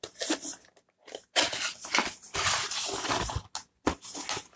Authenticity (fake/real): real